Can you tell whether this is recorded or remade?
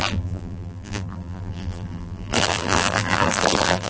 remade